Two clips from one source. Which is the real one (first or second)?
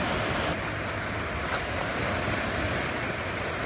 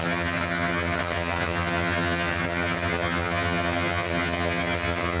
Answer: first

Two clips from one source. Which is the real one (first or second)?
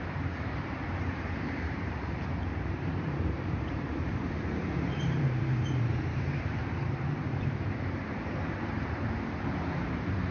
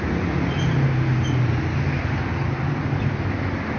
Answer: second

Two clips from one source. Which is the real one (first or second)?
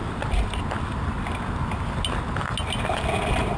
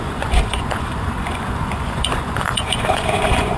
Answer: first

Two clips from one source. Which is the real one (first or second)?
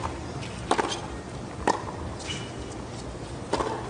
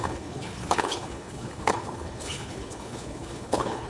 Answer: first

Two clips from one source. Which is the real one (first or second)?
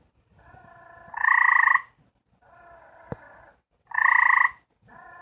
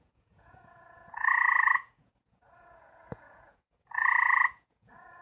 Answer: first